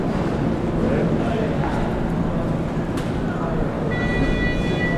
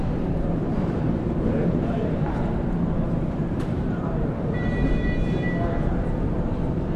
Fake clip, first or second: second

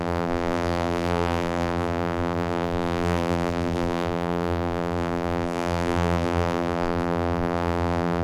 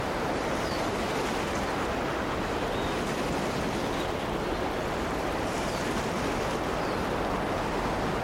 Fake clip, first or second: first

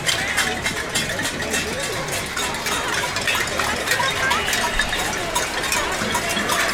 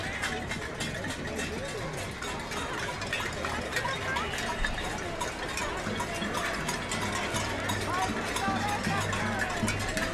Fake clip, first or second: first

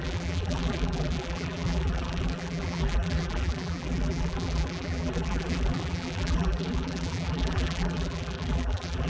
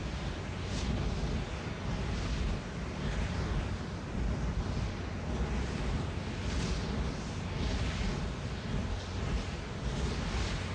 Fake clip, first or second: first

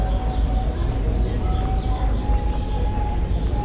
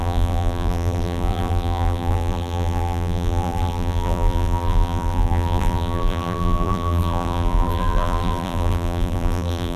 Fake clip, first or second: second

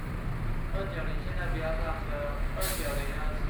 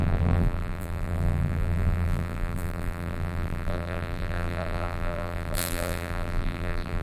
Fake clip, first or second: second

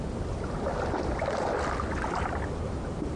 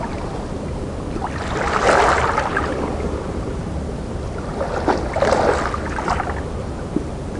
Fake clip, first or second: first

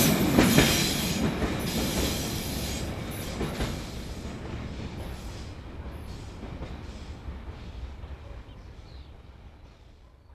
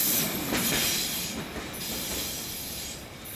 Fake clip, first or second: second